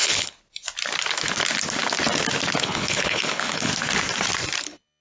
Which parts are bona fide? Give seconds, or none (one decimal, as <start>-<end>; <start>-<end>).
0.4-2.6; 3.7-4.6